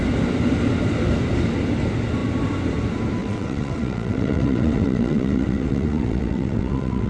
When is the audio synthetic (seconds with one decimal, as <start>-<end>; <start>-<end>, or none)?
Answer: 3.2-7.1